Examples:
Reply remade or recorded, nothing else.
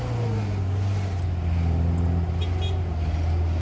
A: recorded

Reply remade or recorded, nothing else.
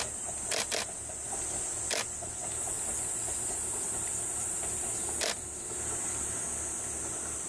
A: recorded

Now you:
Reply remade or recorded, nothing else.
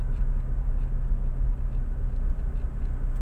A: recorded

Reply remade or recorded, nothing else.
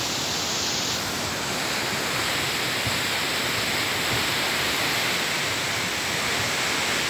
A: recorded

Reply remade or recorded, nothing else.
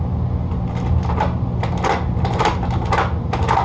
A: recorded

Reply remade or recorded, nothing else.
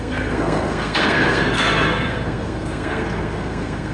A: remade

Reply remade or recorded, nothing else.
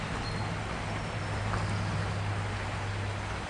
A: recorded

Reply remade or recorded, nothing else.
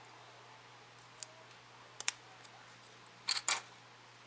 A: recorded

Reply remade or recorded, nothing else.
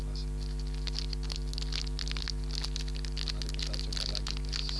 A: recorded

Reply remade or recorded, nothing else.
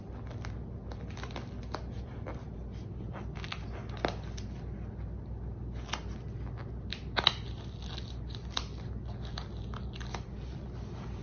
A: recorded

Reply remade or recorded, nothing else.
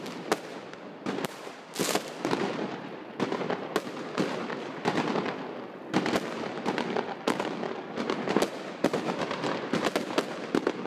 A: recorded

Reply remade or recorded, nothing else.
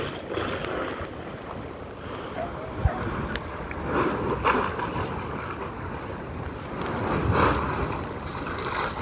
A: recorded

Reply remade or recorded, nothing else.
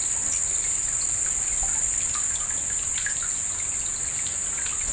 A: recorded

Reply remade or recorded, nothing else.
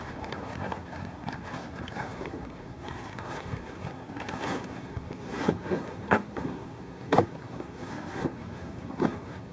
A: remade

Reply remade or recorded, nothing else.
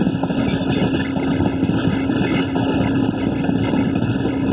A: recorded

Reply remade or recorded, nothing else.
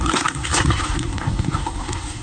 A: remade